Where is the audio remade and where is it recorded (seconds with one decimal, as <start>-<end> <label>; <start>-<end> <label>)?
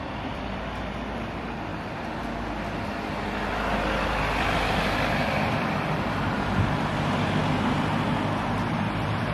0.0-1.7 remade; 1.7-4.2 recorded; 4.2-7.4 remade; 7.4-8.7 recorded; 8.7-9.3 remade